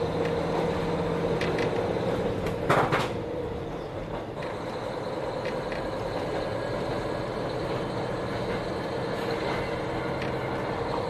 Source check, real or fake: real